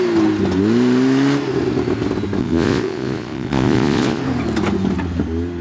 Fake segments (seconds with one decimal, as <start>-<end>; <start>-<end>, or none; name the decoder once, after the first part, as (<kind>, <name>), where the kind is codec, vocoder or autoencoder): 2.4-4.2 (vocoder, Vocos)